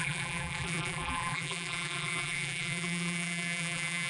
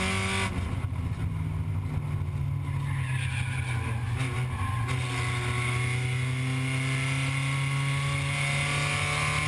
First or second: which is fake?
first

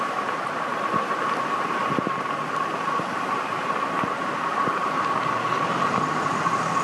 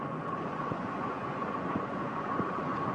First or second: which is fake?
second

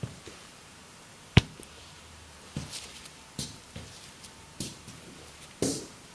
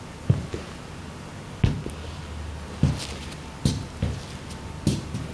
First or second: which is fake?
first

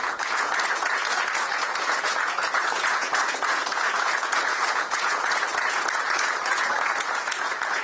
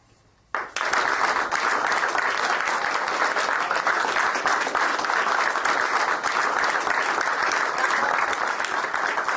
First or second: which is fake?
first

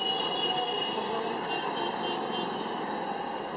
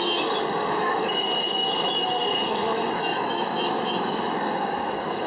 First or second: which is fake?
second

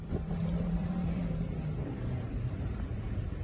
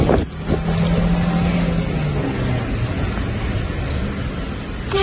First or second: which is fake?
first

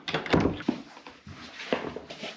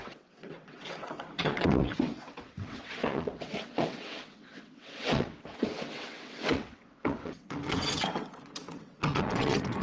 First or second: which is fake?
second